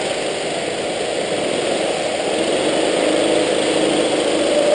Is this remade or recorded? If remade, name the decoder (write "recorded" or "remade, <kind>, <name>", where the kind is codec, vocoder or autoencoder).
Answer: recorded